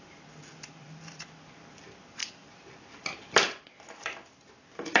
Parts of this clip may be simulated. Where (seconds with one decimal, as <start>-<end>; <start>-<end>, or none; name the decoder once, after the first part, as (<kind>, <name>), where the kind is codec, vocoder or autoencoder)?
0.0-5.0 (vocoder, BigVGAN v2)